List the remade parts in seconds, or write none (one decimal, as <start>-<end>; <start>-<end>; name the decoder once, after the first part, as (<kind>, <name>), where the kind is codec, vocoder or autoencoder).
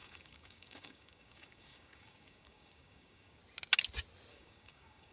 0.0-3.4 (codec, DAC); 4.3-5.1